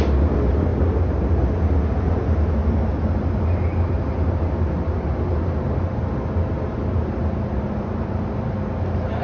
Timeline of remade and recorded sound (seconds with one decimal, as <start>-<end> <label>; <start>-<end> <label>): 0.0-9.2 recorded